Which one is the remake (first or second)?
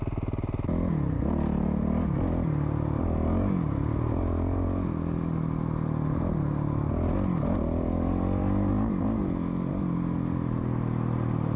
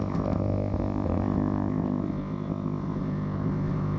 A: second